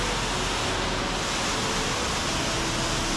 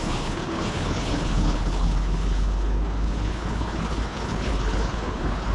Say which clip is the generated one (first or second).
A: second